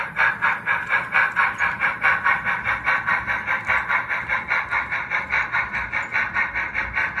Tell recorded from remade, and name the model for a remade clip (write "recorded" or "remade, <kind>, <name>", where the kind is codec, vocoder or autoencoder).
recorded